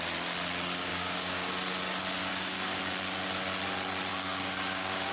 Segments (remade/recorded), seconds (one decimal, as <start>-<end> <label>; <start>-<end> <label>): 0.0-0.9 recorded; 0.9-1.5 remade; 1.5-2.2 recorded; 2.2-2.8 remade; 2.8-4.1 recorded; 4.1-5.1 remade